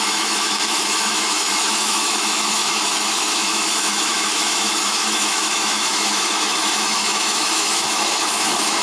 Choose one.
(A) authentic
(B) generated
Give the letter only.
B